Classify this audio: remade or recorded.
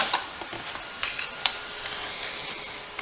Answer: recorded